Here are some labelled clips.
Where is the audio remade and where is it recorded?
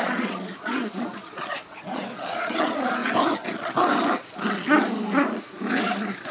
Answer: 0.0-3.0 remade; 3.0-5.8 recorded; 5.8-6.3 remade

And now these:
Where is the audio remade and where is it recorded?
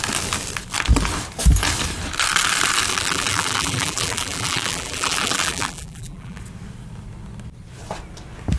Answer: 0.0-2.9 recorded; 2.9-6.4 remade; 6.4-8.6 recorded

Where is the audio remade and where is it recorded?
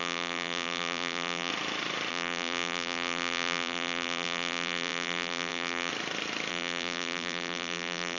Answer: 0.0-1.5 remade; 1.5-2.1 recorded; 2.1-5.9 remade; 5.9-6.5 recorded; 6.5-8.2 remade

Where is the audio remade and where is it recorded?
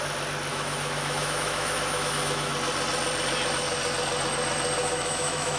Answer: 0.0-0.5 recorded; 0.5-2.5 remade; 2.5-4.8 recorded; 4.8-5.6 remade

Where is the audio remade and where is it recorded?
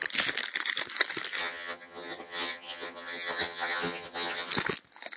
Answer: 0.0-1.4 recorded; 1.4-4.5 remade; 4.5-5.2 recorded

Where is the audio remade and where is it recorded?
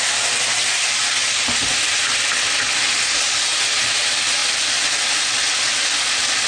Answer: 0.0-6.5 recorded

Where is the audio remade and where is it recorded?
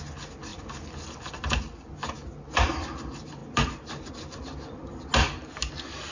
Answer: 0.0-6.1 recorded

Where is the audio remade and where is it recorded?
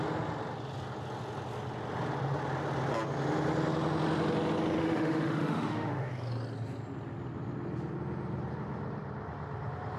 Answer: 0.0-4.8 recorded; 4.8-6.1 remade; 6.1-10.0 recorded